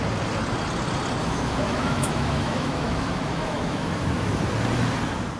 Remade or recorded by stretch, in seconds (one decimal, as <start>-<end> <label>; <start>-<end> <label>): 0.0-1.2 recorded; 1.2-4.4 remade; 4.4-5.4 recorded